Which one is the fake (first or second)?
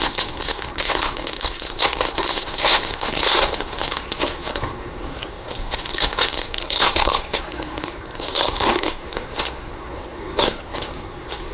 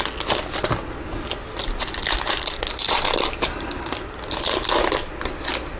first